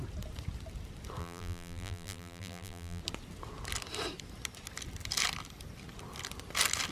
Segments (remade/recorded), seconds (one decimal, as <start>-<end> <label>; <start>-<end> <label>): 0.0-1.2 recorded; 1.2-3.0 remade; 3.0-6.9 recorded